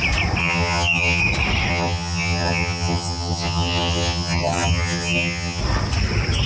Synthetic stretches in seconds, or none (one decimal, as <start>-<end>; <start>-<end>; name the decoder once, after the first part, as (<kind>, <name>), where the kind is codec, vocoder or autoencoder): 0.4-1.2 (vocoder, HiFi-GAN); 1.7-5.6